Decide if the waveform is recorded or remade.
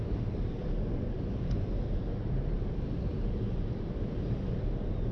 recorded